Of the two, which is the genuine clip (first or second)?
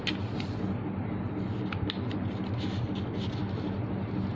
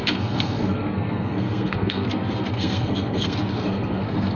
first